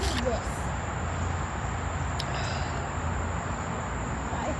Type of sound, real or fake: real